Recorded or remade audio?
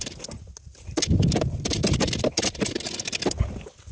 recorded